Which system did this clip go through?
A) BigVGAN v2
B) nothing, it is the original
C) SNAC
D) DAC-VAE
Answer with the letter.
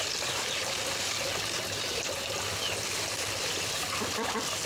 B